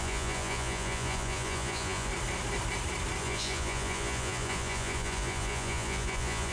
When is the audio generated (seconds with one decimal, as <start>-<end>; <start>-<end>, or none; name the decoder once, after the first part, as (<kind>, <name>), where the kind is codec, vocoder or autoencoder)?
0.0-2.1 (vocoder, Vocos); 3.2-6.5